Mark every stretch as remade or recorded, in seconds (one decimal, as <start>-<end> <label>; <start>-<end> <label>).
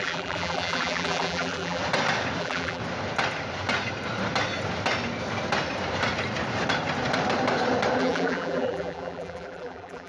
0.0-1.8 remade; 1.8-2.4 recorded; 2.4-2.8 remade; 2.8-8.0 recorded; 8.0-10.1 remade